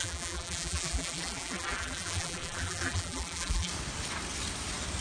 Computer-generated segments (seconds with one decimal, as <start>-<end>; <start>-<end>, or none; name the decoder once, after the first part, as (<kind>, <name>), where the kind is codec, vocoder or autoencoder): 0.0-3.7 (vocoder, BigVGAN v2)